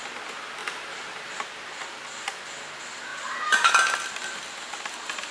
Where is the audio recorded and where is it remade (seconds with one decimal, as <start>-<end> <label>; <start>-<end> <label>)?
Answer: 0.0-0.6 recorded; 0.6-1.4 remade; 1.4-3.1 recorded; 3.1-3.7 remade; 3.7-5.3 recorded